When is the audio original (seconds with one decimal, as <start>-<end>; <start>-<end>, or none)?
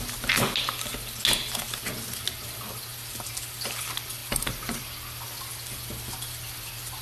0.0-7.0